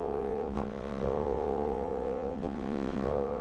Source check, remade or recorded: remade